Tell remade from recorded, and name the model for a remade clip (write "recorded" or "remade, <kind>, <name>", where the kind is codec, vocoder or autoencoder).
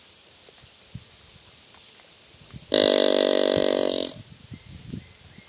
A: recorded